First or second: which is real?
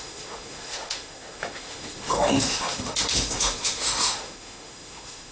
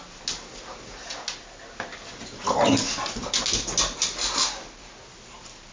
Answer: second